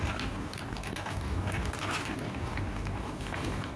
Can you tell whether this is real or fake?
fake